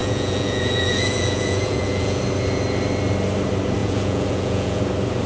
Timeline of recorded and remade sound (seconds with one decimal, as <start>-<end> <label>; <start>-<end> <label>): 0.0-2.2 remade; 2.2-3.8 recorded; 3.8-4.8 remade; 4.8-5.3 recorded